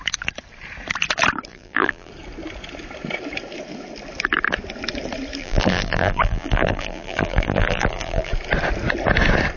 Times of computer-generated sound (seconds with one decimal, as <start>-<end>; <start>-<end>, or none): 1.5-2.1; 5.4-8.3